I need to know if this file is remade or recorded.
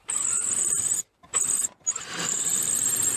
remade